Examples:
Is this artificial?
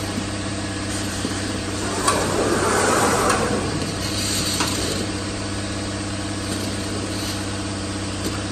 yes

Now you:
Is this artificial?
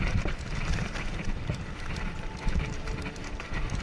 yes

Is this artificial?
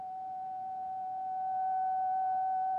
no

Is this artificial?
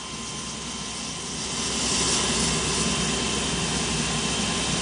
no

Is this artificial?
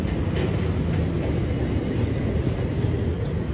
no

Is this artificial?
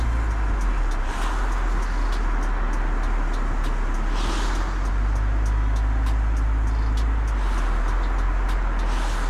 no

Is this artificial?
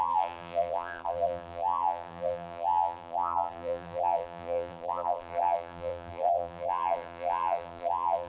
yes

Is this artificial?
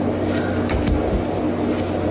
no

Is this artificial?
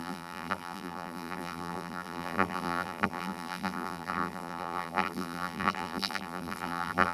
yes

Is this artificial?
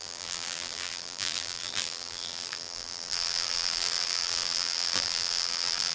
yes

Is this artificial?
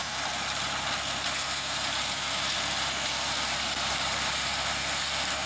no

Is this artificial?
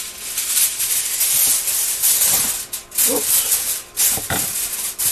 no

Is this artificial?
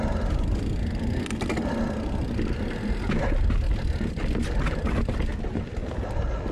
no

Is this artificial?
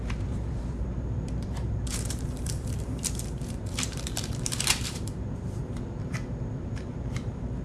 yes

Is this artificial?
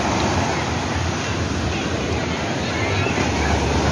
no